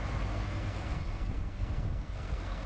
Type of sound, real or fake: fake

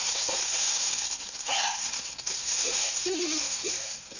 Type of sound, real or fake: fake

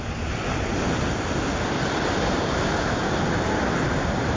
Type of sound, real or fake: real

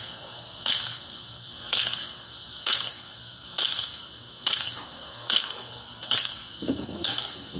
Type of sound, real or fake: fake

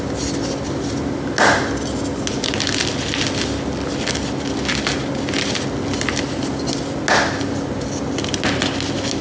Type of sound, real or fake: real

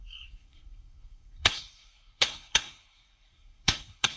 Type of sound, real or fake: fake